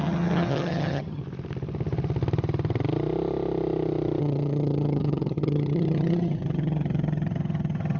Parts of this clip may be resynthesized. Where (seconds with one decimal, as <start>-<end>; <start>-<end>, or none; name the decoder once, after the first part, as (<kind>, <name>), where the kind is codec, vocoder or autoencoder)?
0.0-1.2 (vocoder, HiFi-GAN); 4.2-8.0